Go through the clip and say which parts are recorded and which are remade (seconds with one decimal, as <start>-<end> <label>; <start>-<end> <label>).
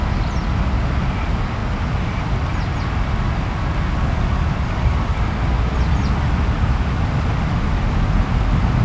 0.0-8.8 recorded